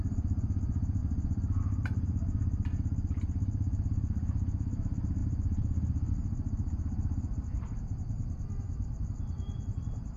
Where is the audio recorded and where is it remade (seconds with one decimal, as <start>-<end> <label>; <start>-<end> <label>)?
0.0-1.0 remade; 1.0-1.6 recorded; 1.6-2.7 remade; 2.7-3.9 recorded; 3.9-5.2 remade; 5.2-6.1 recorded; 6.1-10.2 remade